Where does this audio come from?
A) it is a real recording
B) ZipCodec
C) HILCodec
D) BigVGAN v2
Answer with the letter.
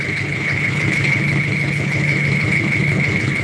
C